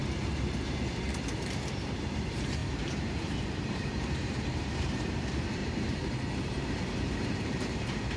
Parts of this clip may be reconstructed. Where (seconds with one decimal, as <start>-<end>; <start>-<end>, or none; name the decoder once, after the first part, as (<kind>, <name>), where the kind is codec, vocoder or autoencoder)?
0.8-5.6 (vocoder, BigVGAN v2); 6.5-8.2